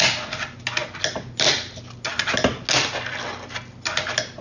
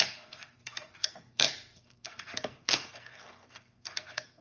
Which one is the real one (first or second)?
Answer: first